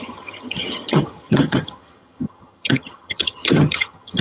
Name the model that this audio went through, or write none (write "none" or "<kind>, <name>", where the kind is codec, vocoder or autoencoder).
vocoder, HiFi-GAN